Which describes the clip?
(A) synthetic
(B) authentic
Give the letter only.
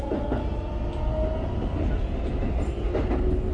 B